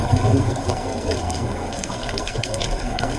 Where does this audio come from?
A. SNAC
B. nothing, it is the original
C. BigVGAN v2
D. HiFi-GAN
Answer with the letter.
A